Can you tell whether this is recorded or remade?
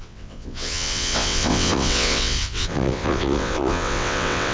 remade